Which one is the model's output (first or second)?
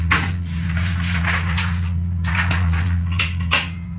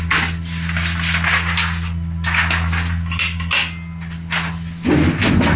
first